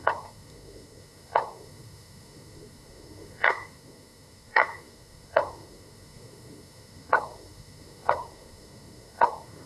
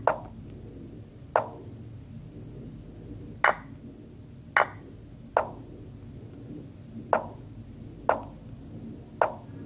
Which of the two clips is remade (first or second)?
first